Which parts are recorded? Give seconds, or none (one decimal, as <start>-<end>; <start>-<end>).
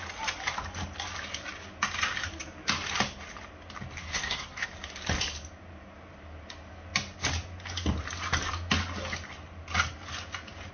0.0-4.0; 4.7-10.7